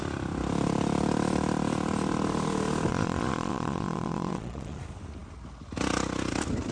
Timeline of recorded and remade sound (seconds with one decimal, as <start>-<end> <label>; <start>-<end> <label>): 0.0-2.9 recorded; 2.9-4.8 remade; 4.8-6.7 recorded